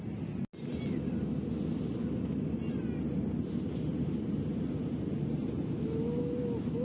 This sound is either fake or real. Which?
real